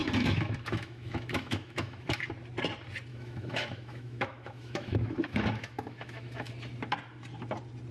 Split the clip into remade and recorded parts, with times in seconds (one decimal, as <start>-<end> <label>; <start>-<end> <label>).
0.0-2.2 remade; 2.2-3.1 recorded; 3.1-6.5 remade; 6.5-7.9 recorded